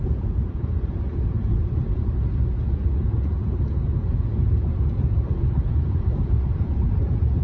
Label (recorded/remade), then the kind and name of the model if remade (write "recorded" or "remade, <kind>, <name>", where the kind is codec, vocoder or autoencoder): remade, vocoder, Vocos